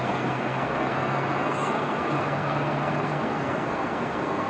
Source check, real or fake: fake